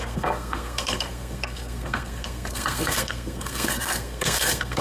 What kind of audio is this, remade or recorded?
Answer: remade